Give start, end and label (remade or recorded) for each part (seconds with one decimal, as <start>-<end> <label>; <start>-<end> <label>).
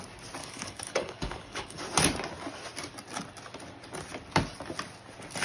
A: 0.0-0.4 recorded; 0.4-1.8 remade; 1.8-5.4 recorded